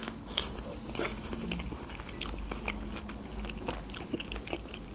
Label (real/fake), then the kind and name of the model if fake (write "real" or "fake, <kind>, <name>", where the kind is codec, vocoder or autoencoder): real